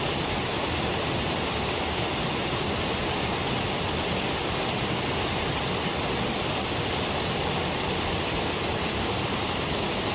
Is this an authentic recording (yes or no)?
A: yes